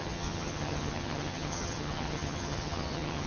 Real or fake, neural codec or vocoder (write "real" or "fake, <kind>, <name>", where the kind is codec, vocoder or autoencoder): fake, vocoder, HiFi-GAN